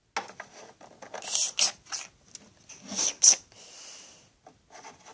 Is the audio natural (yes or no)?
yes